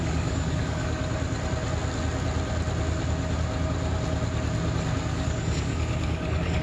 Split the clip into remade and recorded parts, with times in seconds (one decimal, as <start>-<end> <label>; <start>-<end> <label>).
0.0-1.0 remade; 1.0-5.0 recorded; 5.0-6.6 remade